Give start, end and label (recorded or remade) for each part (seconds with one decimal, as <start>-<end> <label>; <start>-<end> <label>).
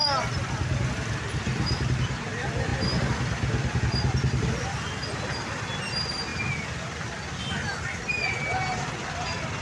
0.0-9.6 recorded